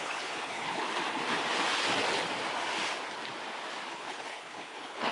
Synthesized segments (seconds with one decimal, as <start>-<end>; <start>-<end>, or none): 0.0-0.8; 3.9-5.1